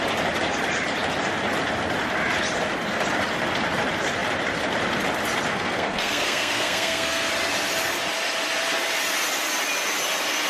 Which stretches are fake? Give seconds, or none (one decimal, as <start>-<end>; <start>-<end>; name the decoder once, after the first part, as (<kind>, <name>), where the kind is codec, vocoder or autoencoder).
5.5-7.3 (codec, SNAC)